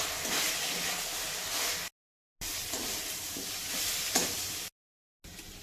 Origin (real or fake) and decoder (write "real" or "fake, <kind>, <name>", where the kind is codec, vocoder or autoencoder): real